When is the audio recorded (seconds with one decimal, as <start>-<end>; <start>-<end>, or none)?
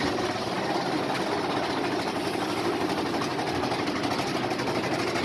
0.0-5.2